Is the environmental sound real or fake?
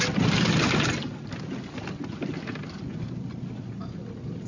real